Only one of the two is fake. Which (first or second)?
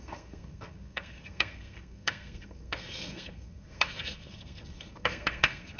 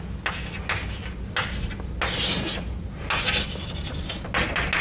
first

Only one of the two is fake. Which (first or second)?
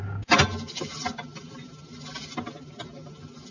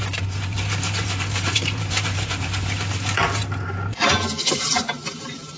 second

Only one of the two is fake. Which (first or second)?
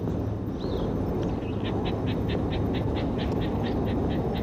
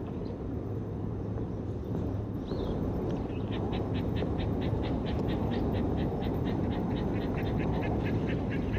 second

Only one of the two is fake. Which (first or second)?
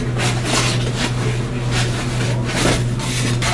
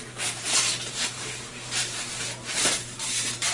second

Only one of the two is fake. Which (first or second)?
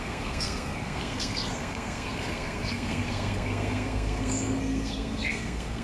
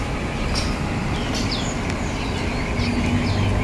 first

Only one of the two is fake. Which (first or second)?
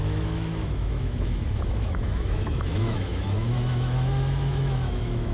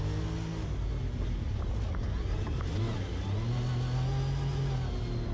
first